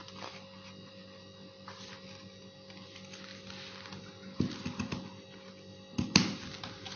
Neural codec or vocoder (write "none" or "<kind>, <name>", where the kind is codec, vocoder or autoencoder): none